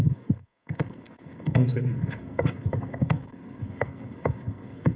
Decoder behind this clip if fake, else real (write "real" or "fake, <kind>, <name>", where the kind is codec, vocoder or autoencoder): fake, codec, SNAC